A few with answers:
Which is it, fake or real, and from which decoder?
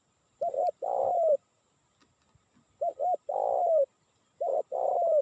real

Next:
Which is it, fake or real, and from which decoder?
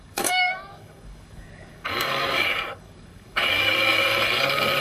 fake, codec, DAC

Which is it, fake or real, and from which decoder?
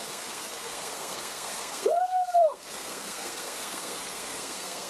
fake, codec, SNAC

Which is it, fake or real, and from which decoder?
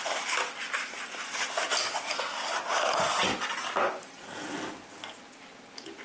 real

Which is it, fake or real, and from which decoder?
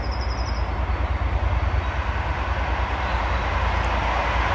real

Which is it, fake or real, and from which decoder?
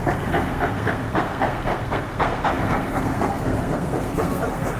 fake, codec, SNAC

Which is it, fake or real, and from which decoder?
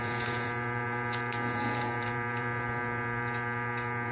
fake, vocoder, Vocos